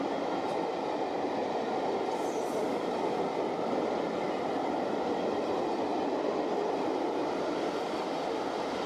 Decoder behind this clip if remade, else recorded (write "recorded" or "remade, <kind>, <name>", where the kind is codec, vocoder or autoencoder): recorded